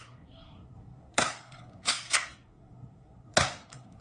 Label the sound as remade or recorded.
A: remade